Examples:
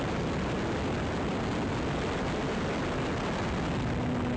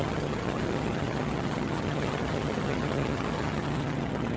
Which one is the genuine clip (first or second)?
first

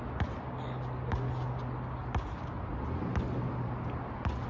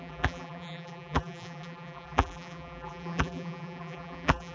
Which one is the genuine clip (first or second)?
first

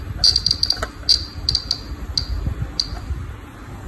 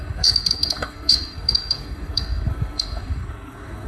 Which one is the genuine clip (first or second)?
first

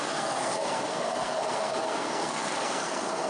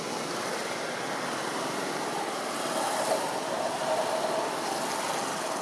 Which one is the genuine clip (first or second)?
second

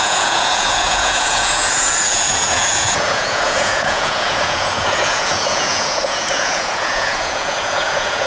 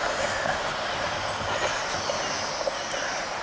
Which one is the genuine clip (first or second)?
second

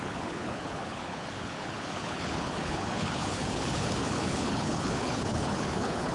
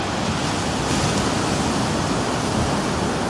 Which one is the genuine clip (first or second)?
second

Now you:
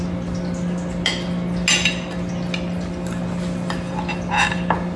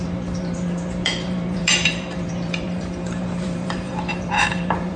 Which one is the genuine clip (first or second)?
first